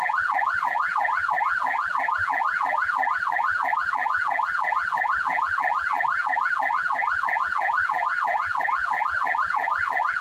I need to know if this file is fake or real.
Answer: fake